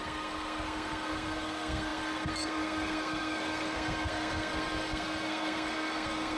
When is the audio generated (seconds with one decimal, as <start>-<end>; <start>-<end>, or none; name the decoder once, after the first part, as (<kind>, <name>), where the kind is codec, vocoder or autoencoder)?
0.0-6.4 (codec, SNAC)